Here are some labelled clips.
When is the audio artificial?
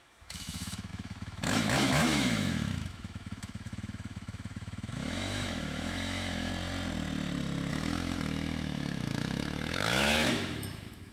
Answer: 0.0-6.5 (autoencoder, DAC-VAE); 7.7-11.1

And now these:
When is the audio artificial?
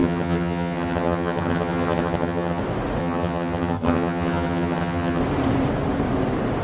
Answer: 0.0-2.6 (vocoder, HiFi-GAN); 3.0-5.2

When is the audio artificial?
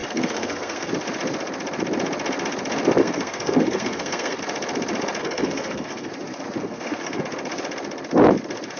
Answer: 0.0-0.9 (codec, SNAC); 3.0-4.4; 5.2-6.1; 6.6-7.2